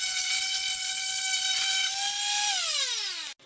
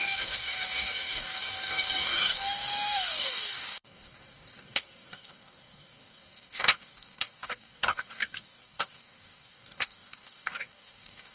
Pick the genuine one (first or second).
first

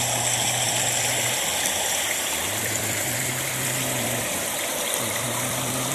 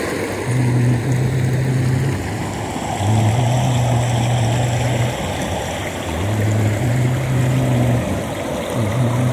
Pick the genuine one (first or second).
second